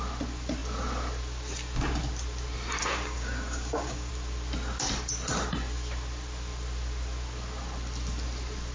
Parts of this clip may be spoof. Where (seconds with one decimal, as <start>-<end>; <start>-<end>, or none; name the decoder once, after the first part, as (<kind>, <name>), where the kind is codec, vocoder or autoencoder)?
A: 2.8-4.1 (codec, DAC)